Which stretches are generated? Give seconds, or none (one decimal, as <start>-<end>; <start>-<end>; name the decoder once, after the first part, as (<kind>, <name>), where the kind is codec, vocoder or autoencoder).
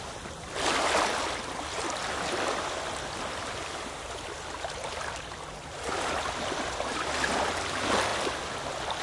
none